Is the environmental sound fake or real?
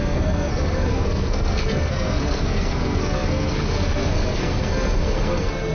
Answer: fake